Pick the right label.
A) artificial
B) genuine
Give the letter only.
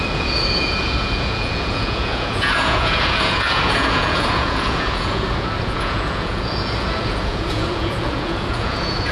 A